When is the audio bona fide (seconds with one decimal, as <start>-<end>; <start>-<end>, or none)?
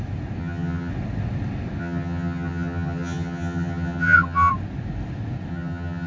0.0-0.4; 0.9-1.8; 4.5-5.5